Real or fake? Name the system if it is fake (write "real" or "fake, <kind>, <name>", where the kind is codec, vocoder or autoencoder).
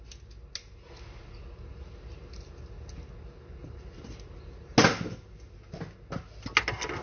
real